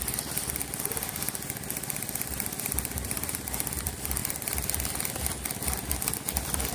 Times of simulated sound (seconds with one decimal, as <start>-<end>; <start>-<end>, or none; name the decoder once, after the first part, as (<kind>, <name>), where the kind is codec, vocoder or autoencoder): none